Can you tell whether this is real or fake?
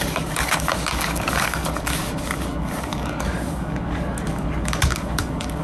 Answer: fake